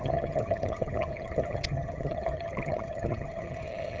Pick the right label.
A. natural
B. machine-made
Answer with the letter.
B